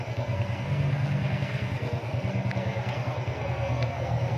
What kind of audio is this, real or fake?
fake